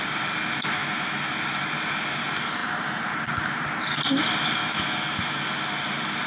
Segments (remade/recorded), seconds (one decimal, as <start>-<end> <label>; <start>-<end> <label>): 0.0-0.8 recorded; 0.8-1.3 remade; 1.3-4.6 recorded; 4.6-5.4 remade; 5.4-6.3 recorded

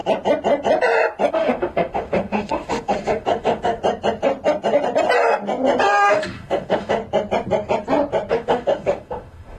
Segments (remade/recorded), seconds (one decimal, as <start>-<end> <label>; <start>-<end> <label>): 0.0-1.3 recorded; 1.3-3.8 remade; 3.8-6.1 recorded; 6.1-7.0 remade; 7.0-8.3 recorded; 8.3-9.6 remade

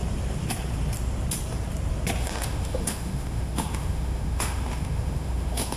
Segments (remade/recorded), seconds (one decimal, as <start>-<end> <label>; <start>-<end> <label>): 0.0-2.2 recorded; 2.2-5.8 remade

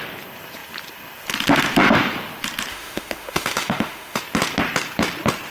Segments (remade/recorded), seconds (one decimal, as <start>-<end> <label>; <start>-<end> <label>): 0.0-2.7 recorded; 2.7-4.2 remade; 4.2-5.5 recorded